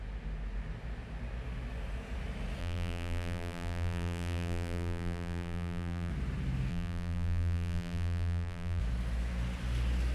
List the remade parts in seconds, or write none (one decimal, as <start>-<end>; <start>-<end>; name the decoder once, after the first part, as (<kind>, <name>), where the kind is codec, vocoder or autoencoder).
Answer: 2.6-6.1 (vocoder, BigVGAN v2); 6.7-8.8